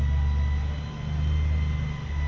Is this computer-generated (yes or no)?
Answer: no